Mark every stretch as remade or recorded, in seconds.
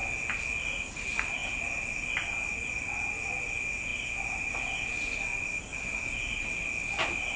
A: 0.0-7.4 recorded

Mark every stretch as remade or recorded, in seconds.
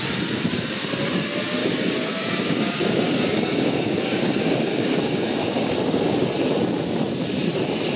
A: 0.0-1.6 recorded; 1.6-6.3 remade; 6.3-8.0 recorded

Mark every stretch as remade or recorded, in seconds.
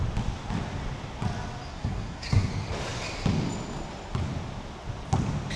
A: 0.0-1.7 recorded; 1.7-2.5 remade; 2.5-5.6 recorded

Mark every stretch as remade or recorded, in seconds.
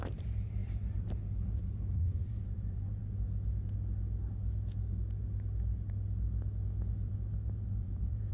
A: 0.0-3.0 remade; 3.0-7.1 recorded; 7.1-8.3 remade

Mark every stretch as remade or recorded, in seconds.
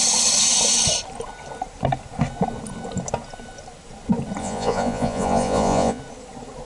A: 0.0-4.4 recorded; 4.4-6.0 remade; 6.0-6.7 recorded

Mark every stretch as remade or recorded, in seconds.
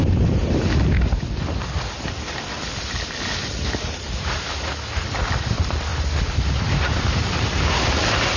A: 0.0-8.4 recorded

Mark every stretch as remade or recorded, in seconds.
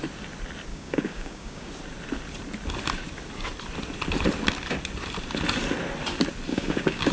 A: 0.0-0.7 recorded; 0.7-1.7 remade; 1.7-6.5 recorded; 6.5-7.1 remade